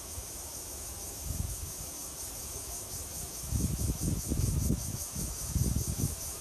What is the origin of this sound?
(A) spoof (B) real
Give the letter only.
A